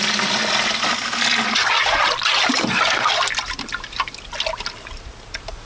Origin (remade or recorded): recorded